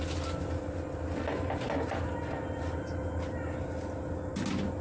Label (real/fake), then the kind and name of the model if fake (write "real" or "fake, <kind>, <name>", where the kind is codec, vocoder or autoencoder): real